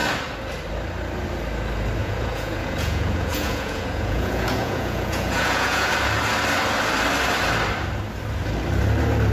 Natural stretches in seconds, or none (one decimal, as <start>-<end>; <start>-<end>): 0.0-2.0; 5.9-9.3